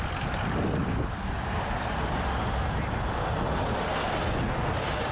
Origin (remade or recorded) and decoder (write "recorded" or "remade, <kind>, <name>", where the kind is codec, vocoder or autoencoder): recorded